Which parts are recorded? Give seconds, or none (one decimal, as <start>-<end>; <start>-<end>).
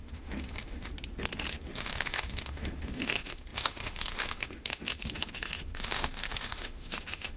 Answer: 0.9-1.5